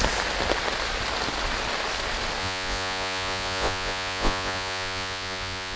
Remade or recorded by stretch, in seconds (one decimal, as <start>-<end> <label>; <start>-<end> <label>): 0.0-2.4 recorded; 2.4-5.8 remade